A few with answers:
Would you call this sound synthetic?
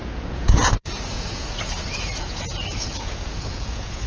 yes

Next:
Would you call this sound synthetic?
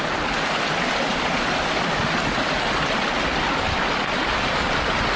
no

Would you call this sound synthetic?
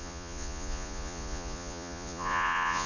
yes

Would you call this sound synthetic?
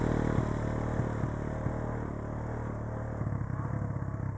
no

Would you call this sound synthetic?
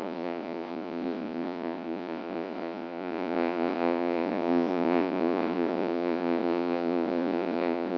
yes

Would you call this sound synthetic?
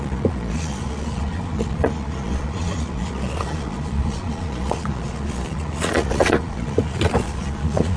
yes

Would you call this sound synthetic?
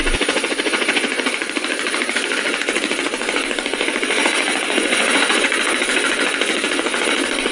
yes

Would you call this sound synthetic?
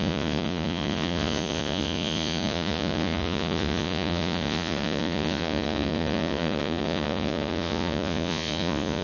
yes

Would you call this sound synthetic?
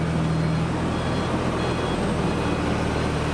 no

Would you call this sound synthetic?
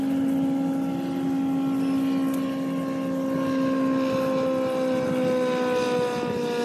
no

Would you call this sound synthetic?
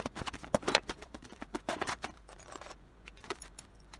yes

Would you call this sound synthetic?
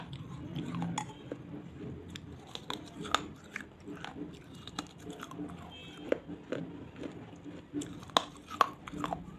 no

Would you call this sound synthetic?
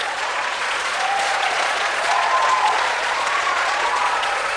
yes